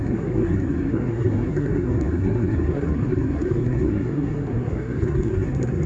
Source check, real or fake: fake